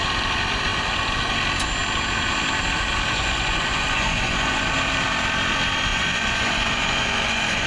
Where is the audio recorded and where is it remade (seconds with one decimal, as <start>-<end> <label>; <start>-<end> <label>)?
0.0-3.1 recorded; 3.1-4.6 remade; 4.6-5.9 recorded; 5.9-7.7 remade